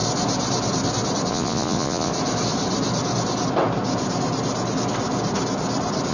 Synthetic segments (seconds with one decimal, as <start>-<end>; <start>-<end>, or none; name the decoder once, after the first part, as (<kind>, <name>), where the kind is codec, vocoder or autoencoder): 1.3-2.1 (vocoder, Vocos)